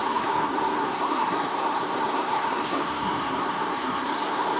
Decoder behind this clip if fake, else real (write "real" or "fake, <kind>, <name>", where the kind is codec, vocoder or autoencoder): fake, codec, SNAC